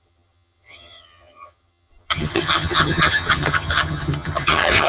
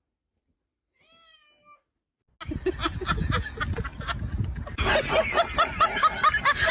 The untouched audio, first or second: second